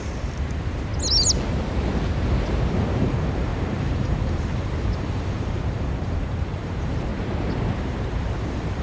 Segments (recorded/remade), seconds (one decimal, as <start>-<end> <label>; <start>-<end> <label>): 0.0-0.9 remade; 0.9-2.7 recorded; 2.7-7.1 remade; 7.1-7.8 recorded; 7.8-8.8 remade